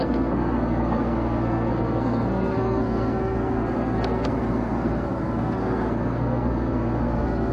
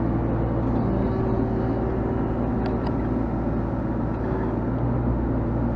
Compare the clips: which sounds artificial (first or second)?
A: first